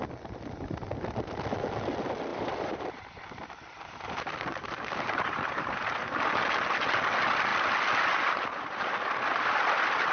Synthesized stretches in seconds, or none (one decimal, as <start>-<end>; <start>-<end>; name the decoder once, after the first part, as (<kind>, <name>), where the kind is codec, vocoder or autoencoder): 2.3-6.0 (vocoder, BigVGAN v2)